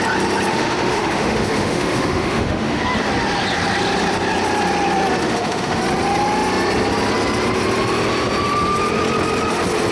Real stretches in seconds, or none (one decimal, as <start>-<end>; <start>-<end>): 0.0-0.5; 2.8-5.2; 5.8-9.9